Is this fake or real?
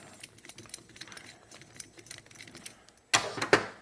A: real